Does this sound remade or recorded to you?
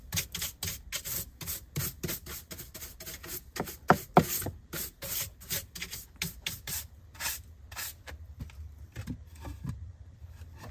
recorded